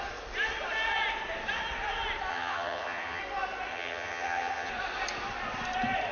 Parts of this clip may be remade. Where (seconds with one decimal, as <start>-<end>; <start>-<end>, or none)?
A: 2.3-3.2; 3.7-4.7